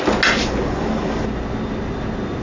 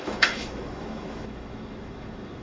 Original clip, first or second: first